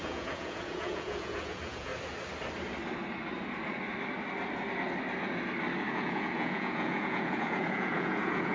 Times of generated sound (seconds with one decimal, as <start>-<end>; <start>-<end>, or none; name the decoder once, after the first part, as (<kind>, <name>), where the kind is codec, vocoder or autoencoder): 0.0-1.9 (vocoder, Vocos); 5.9-8.5